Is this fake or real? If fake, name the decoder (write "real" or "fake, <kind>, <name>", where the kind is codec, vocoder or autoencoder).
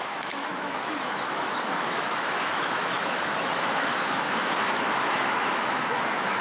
fake, autoencoder, DAC-VAE